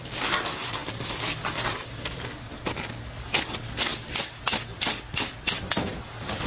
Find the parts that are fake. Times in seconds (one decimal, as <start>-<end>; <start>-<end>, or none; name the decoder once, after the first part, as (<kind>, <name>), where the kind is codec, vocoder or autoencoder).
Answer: none